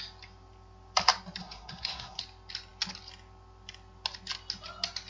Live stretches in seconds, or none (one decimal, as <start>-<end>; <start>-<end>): 0.0-1.4; 2.2-5.1